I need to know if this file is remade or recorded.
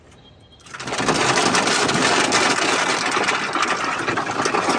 recorded